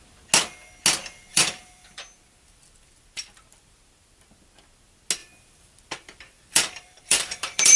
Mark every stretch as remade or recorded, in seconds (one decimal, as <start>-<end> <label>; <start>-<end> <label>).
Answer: 0.0-1.3 recorded; 1.3-2.0 remade; 2.0-5.2 recorded; 5.2-7.8 remade